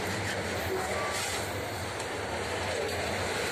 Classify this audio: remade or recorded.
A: recorded